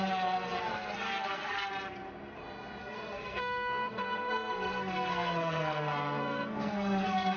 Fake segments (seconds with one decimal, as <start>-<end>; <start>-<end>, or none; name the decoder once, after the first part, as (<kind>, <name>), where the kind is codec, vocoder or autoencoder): 0.7-1.7 (codec, SNAC); 2.8-7.4